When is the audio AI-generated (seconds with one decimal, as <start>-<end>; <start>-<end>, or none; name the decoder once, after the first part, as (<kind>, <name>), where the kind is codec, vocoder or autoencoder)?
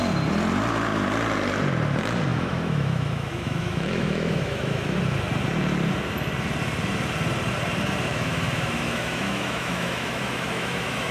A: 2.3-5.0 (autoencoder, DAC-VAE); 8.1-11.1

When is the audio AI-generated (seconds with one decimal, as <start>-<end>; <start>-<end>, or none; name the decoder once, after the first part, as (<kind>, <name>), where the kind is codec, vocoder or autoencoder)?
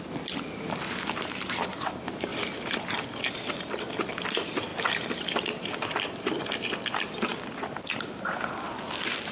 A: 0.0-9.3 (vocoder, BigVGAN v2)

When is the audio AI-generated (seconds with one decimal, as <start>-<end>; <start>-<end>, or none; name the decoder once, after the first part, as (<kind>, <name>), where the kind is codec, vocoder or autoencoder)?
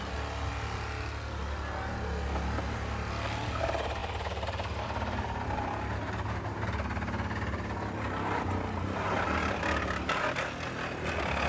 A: 4.0-5.8 (vocoder, BigVGAN v2)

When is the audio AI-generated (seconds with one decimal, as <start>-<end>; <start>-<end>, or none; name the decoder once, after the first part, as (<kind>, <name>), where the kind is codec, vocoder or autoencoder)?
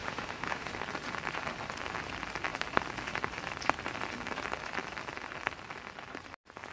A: 0.0-0.7 (autoencoder, DAC-VAE)